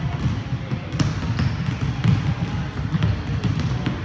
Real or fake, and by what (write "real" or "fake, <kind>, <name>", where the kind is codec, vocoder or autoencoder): real